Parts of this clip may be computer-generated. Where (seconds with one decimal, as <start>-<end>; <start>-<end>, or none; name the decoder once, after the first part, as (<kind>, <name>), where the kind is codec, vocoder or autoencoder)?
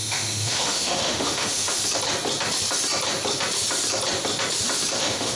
0.0-1.8 (autoencoder, DAC-VAE); 5.0-5.4